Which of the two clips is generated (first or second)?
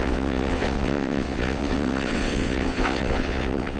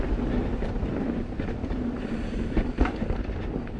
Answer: first